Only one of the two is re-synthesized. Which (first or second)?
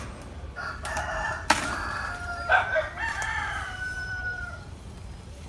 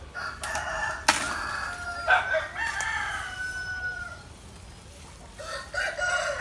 first